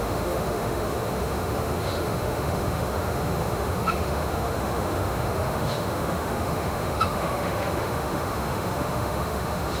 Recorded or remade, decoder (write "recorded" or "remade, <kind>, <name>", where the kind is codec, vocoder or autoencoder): remade, autoencoder, DAC-VAE